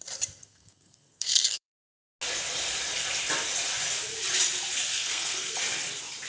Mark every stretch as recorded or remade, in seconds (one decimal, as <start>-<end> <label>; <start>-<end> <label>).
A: 0.0-0.4 recorded; 0.4-2.1 remade; 2.1-4.9 recorded; 4.9-5.6 remade; 5.6-6.3 recorded